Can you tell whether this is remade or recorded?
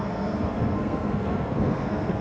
remade